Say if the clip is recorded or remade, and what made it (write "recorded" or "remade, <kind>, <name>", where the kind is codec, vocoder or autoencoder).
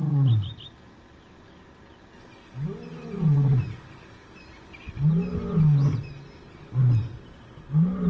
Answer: recorded